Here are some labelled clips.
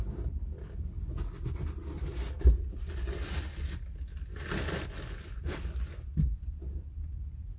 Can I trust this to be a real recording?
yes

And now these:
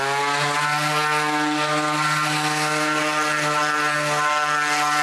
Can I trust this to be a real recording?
yes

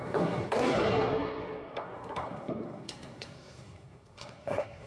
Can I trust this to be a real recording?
no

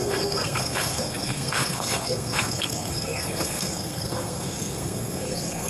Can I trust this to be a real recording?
no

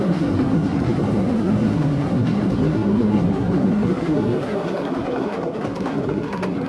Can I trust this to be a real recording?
no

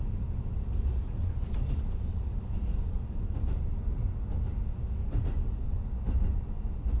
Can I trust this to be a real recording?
yes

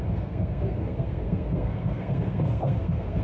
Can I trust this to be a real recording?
no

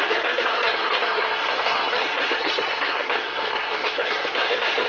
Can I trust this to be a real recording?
no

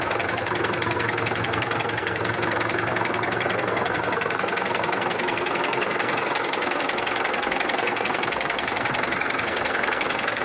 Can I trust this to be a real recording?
no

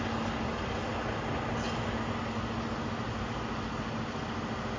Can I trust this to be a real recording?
yes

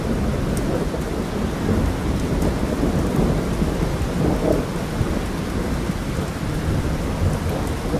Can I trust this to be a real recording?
yes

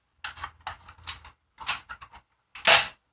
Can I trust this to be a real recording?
yes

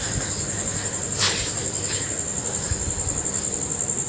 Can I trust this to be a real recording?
yes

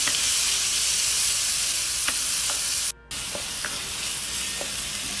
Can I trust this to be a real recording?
yes